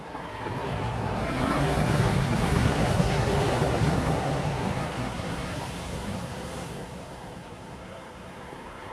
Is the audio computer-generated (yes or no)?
yes